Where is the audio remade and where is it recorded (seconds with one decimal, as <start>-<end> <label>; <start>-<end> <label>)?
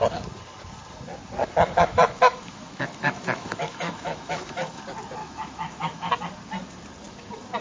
0.0-1.4 recorded; 1.4-4.8 remade; 4.8-5.2 recorded; 5.2-6.1 remade; 6.1-7.6 recorded